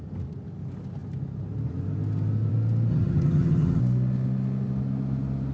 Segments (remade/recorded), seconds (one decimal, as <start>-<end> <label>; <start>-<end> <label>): 0.0-2.9 recorded; 2.9-3.8 remade; 3.8-5.5 recorded